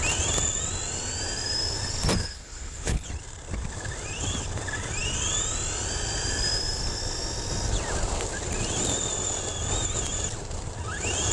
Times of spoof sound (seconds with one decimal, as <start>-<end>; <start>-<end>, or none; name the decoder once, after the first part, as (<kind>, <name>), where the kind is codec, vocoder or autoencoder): 2.2-3.1 (codec, HILCodec)